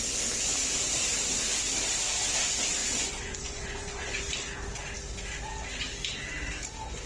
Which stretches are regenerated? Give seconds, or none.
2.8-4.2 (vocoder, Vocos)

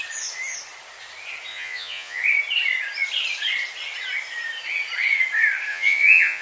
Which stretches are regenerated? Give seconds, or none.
1.5-2.2 (vocoder, Vocos); 5.7-6.4

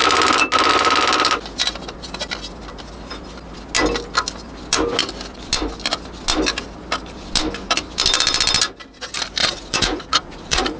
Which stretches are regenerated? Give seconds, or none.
9.4-10.8 (vocoder, Vocos)

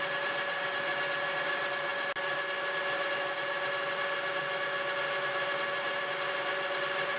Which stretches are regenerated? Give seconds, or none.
none